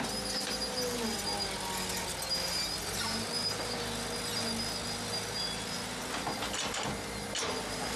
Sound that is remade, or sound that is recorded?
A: recorded